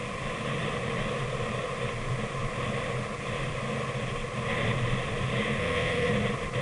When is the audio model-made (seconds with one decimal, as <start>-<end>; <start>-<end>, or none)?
5.6-6.1